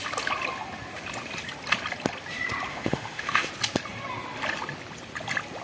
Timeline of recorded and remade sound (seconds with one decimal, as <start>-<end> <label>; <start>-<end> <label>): 0.0-2.7 recorded; 2.7-3.5 remade; 3.5-5.6 recorded